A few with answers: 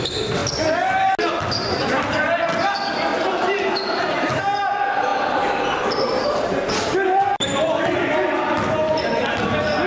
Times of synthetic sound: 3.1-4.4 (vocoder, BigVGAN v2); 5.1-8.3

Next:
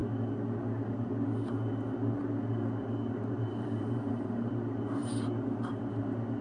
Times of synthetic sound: 3.4-4.5 (vocoder, BigVGAN v2)

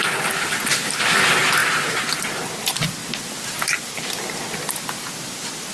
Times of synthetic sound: none

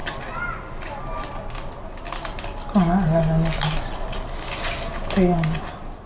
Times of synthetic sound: none

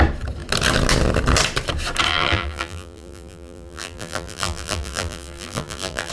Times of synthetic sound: 2.1-6.1 (vocoder, BigVGAN v2)

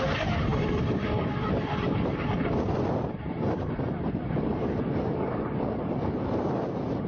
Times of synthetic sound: 0.5-4.8 (vocoder, BigVGAN v2)